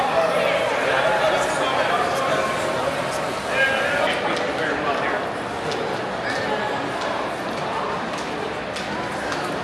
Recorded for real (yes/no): yes